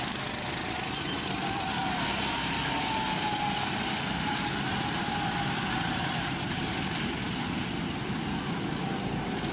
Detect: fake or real real